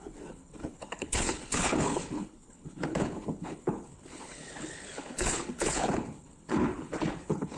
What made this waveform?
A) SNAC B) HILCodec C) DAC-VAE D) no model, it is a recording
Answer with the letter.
B